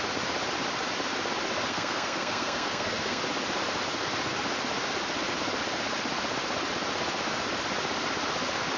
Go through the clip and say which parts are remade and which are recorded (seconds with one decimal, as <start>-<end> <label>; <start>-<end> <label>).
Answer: 0.0-1.7 recorded; 1.7-3.2 remade; 3.2-8.8 recorded

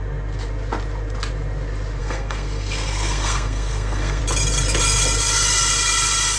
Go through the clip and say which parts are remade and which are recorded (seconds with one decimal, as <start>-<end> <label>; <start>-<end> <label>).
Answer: 0.0-2.0 recorded; 2.0-4.2 remade; 4.2-6.4 recorded

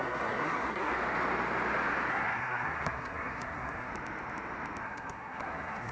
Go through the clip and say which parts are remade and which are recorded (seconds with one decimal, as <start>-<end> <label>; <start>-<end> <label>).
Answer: 0.0-0.9 remade; 0.9-2.1 recorded; 2.1-3.9 remade; 3.9-4.8 recorded; 4.8-5.9 remade

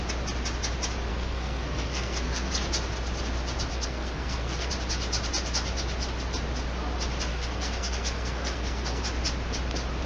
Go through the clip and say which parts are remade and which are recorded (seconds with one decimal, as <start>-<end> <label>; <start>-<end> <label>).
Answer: 0.0-1.1 recorded; 1.1-2.5 remade; 2.5-3.7 recorded; 3.7-4.7 remade; 4.7-7.3 recorded; 7.3-9.0 remade; 9.0-10.1 recorded